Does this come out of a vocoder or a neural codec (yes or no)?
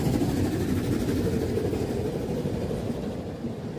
no